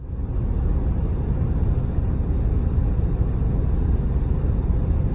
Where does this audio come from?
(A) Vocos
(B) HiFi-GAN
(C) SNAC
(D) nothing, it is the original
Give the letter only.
D